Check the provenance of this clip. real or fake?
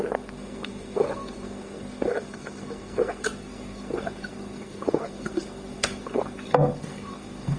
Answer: fake